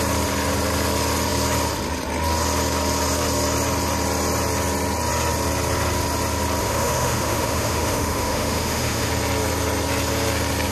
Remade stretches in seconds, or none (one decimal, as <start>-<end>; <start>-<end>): 6.6-9.1